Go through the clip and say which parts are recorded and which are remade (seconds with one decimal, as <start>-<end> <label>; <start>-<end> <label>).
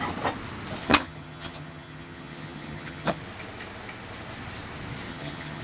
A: 0.0-0.8 recorded; 0.8-3.2 remade; 3.2-5.1 recorded; 5.1-5.6 remade